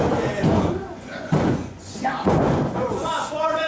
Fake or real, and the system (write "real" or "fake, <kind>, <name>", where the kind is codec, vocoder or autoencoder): fake, vocoder, Vocos